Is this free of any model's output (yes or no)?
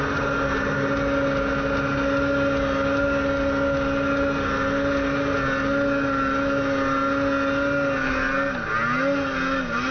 yes